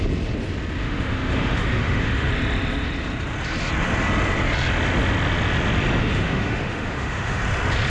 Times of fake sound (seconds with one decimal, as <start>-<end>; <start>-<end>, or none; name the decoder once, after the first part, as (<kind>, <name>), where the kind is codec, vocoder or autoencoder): 0.8-2.3 (autoencoder, DAC-VAE); 6.0-7.4